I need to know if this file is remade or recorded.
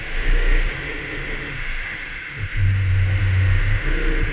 remade